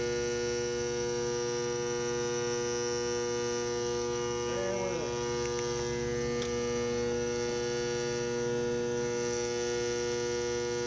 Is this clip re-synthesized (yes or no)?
no